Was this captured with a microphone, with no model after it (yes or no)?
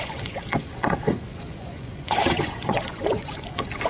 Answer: no